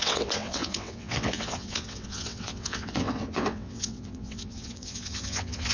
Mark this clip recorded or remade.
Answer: remade